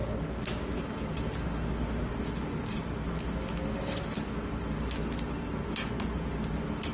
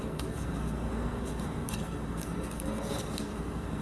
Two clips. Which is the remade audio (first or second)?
second